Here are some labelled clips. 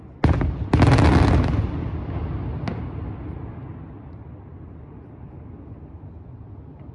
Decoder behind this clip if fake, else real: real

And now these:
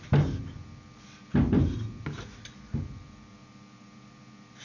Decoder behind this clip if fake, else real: real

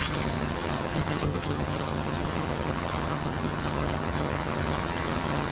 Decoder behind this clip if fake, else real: fake, vocoder, HiFi-GAN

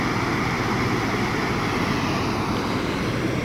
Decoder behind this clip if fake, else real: real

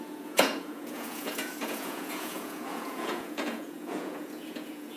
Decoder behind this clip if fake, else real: fake, vocoder, Vocos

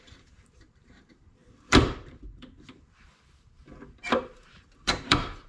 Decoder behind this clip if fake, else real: fake, vocoder, BigVGAN v2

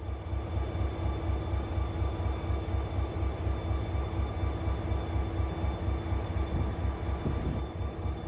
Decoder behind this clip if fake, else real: real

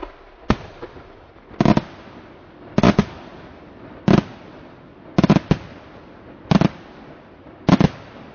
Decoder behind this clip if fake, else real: real